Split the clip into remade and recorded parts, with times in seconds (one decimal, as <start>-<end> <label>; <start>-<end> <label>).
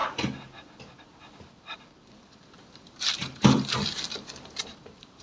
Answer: 0.0-2.6 recorded; 2.6-3.4 remade; 3.4-4.5 recorded; 4.5-5.2 remade